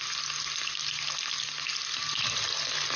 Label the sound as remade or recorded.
recorded